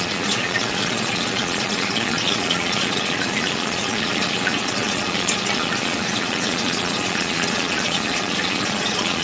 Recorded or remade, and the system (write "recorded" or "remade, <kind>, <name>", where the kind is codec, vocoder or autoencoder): remade, vocoder, Vocos